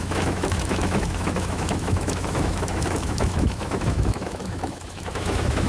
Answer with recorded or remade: remade